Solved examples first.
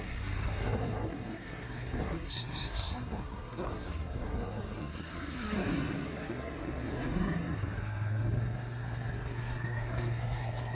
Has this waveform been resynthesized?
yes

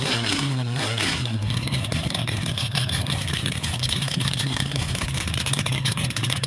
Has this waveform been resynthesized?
yes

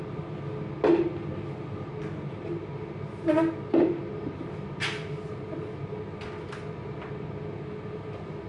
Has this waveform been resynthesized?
no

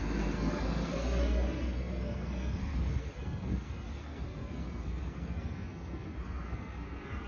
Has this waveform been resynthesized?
yes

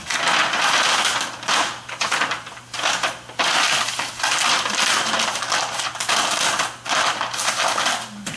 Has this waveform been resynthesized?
no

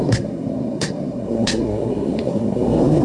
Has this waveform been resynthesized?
yes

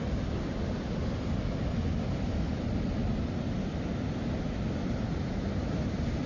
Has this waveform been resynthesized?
no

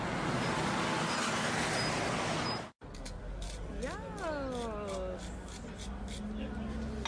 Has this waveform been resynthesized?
no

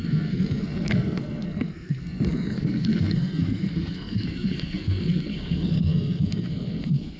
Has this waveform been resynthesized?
yes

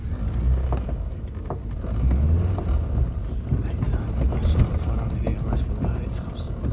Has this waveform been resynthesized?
no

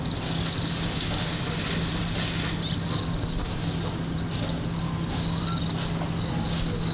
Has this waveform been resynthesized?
no